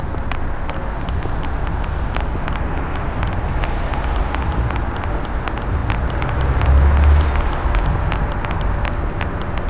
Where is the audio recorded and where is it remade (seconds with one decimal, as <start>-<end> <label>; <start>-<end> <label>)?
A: 0.0-9.7 recorded